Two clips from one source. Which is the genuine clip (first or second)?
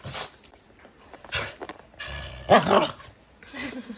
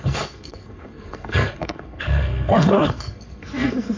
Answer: first